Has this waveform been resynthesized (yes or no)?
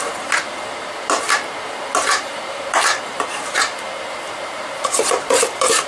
yes